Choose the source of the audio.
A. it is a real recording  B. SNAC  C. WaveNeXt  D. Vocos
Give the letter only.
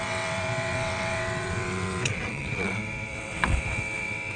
C